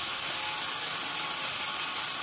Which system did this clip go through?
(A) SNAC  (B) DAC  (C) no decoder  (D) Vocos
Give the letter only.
C